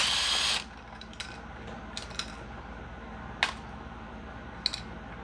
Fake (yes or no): no